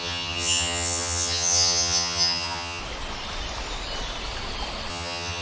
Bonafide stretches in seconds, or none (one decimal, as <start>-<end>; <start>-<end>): 2.8-4.9